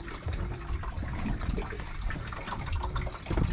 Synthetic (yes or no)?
no